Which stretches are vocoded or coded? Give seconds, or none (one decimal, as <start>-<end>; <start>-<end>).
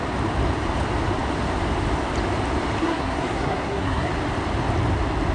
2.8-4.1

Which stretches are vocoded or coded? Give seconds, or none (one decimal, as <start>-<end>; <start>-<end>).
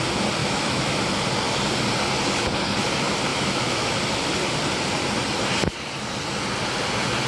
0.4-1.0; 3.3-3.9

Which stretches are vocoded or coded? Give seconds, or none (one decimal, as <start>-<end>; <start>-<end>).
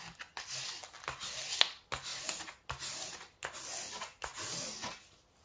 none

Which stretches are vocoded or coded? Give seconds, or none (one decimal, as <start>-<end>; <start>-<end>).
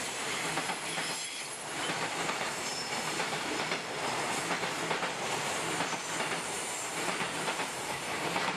0.0-1.1; 1.8-3.8; 6.3-8.6